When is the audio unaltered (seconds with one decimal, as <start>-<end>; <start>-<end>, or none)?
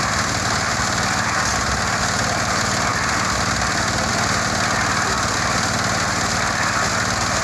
0.0-7.4